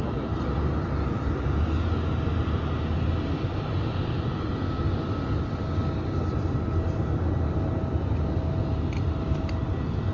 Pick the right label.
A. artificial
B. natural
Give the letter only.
B